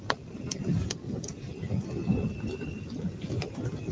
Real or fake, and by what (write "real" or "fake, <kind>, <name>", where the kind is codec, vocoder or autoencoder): real